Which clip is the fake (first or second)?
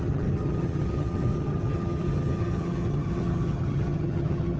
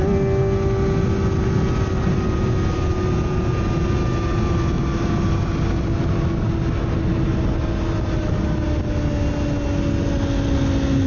first